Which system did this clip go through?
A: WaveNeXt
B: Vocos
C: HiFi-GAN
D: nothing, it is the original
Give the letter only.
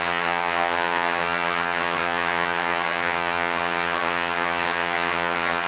C